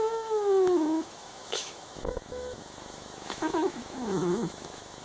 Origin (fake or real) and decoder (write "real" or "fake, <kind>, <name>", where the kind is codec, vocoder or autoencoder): fake, autoencoder, DAC-VAE